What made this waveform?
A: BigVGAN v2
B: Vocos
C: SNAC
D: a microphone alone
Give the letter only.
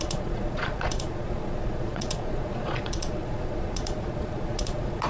B